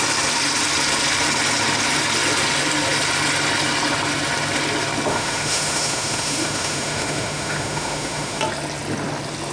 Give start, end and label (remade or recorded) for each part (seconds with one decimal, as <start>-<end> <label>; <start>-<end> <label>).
0.0-5.1 recorded; 5.1-8.4 remade; 8.4-9.5 recorded